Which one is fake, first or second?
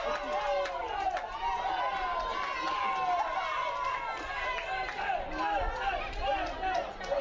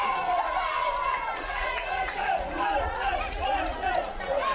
second